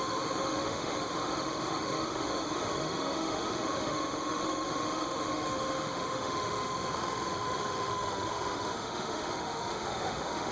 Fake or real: fake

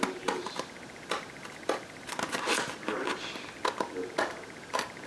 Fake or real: real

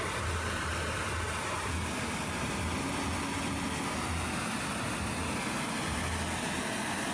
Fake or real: real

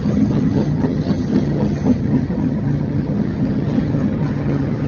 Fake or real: fake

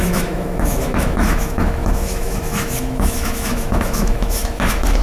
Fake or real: fake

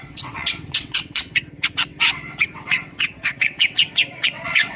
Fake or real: fake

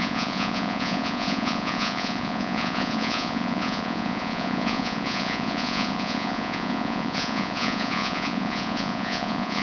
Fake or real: fake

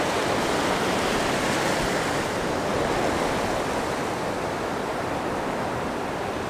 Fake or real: real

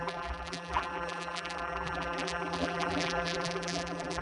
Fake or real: fake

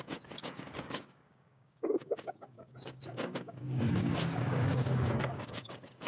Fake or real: fake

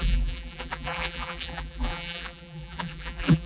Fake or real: fake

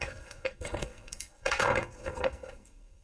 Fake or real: fake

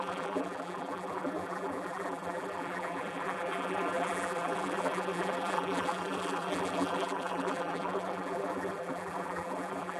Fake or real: fake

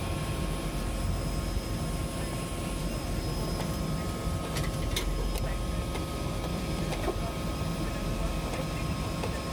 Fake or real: real